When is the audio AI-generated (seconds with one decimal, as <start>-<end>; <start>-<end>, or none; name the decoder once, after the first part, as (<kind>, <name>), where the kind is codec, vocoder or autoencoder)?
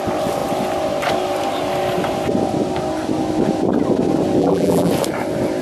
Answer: 4.4-4.9 (vocoder, BigVGAN v2)